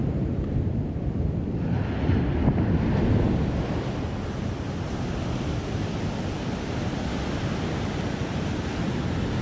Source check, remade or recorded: recorded